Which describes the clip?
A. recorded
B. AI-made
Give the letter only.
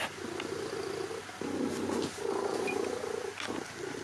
A